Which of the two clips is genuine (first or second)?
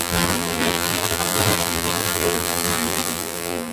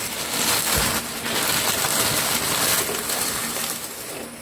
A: second